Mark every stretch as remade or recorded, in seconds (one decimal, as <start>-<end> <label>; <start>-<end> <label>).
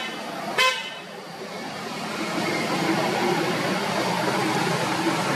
0.0-5.4 recorded